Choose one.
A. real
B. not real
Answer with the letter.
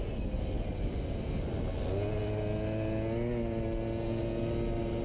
A